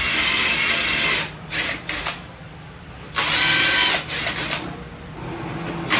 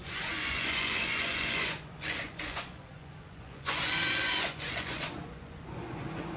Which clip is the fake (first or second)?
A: second